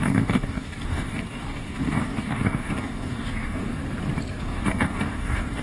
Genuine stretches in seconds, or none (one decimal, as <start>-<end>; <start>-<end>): 3.8-4.4